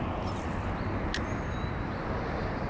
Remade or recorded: recorded